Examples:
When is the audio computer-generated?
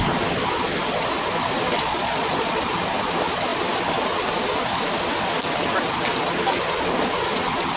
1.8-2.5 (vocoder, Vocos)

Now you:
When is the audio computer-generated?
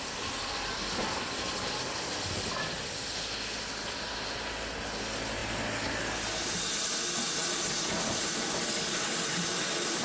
none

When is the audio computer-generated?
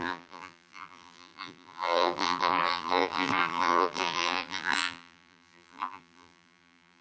0.0-7.0 (vocoder, BigVGAN v2)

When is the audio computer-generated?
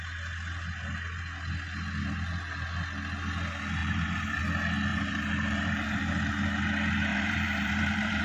3.8-4.4 (vocoder, BigVGAN v2); 4.9-6.6; 7.1-8.2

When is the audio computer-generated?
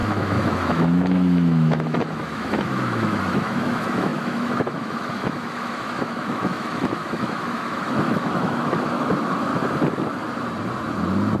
0.0-9.5 (autoencoder, DAC-VAE)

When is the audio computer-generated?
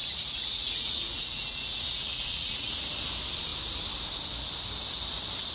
0.0-2.9 (vocoder, Vocos)